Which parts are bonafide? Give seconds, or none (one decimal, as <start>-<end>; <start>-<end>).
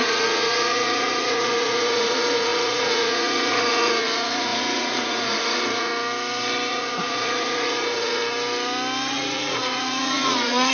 5.9-6.7; 8.2-9.1